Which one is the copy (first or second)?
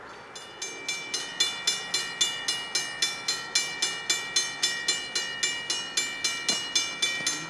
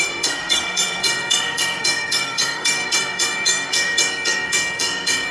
second